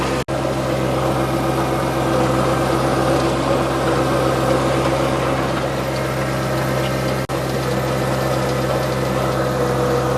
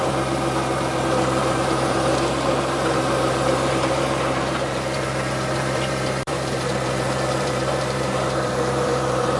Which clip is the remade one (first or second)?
second